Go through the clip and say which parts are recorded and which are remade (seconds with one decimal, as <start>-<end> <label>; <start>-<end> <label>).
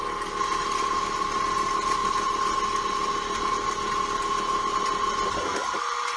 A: 0.0-6.2 recorded